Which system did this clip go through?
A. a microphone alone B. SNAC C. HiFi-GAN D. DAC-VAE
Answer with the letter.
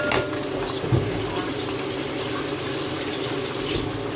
A